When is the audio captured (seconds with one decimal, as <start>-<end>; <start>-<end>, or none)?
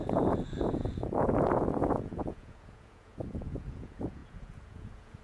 none